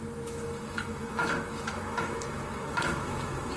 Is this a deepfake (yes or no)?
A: yes